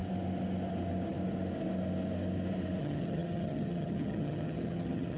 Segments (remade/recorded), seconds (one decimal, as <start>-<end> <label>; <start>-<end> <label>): 0.0-2.8 recorded; 2.8-5.2 remade